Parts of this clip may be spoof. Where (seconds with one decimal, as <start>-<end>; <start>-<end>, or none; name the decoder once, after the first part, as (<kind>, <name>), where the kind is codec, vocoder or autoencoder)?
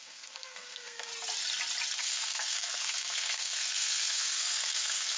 0.0-1.1 (codec, SNAC); 2.0-5.2